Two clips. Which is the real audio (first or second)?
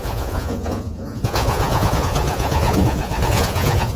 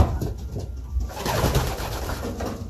second